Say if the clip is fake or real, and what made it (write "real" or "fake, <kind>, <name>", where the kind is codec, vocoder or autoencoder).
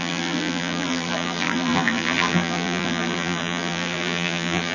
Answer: fake, vocoder, BigVGAN v2